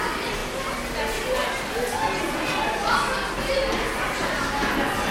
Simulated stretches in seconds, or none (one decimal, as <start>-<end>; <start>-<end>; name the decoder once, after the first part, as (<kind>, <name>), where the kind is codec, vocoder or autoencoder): none